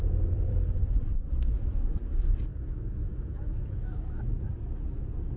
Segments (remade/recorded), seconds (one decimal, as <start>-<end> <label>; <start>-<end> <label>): 0.0-2.5 recorded; 2.5-4.5 remade; 4.5-5.4 recorded